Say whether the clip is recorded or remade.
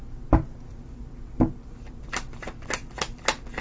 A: recorded